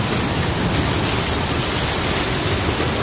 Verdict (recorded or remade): recorded